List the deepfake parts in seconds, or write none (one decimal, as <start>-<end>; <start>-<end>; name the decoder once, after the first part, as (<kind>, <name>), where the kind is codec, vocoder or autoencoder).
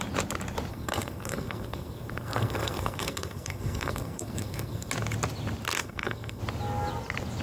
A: 0.7-4.9 (codec, SNAC); 5.8-6.4